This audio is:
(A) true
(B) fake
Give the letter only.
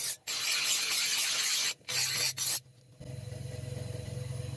A